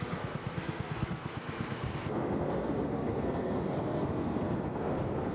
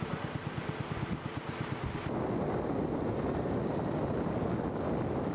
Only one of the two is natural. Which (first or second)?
second